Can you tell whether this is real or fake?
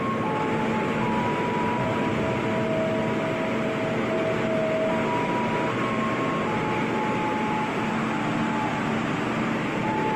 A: real